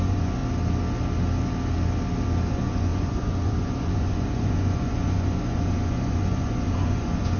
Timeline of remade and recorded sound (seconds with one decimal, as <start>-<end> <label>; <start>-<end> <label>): 0.0-0.4 remade; 0.4-2.5 recorded; 2.5-7.4 remade